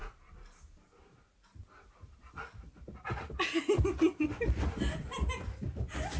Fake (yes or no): no